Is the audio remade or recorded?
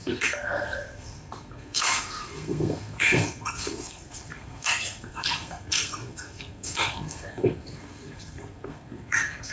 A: remade